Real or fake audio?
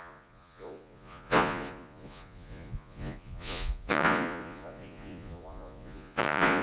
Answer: fake